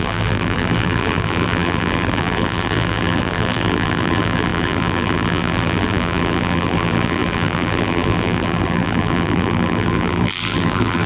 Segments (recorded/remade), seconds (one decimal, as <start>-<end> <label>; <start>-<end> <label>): 0.0-11.1 remade

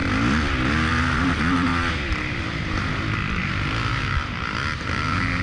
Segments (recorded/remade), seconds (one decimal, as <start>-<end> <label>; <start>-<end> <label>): 0.0-5.4 recorded

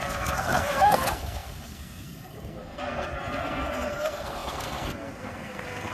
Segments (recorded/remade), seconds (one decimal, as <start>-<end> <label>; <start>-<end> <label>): 0.0-5.9 remade

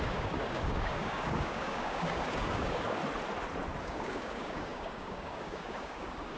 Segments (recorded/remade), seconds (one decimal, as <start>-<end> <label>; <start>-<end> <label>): 0.0-3.0 remade; 3.0-3.8 recorded; 3.8-6.4 remade